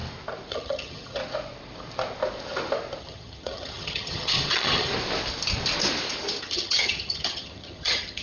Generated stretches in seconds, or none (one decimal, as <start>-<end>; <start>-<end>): 0.5-1.2; 3.0-4.9; 6.4-8.2